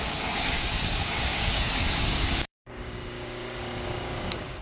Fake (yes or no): yes